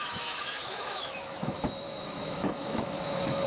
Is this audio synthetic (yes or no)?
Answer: yes